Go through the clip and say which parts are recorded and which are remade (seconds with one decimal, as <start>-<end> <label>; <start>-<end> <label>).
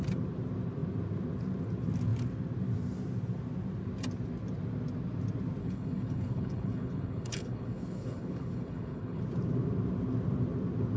0.0-5.6 recorded; 5.6-9.2 remade; 9.2-11.0 recorded